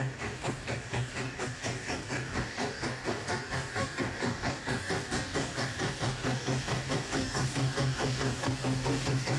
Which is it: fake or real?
fake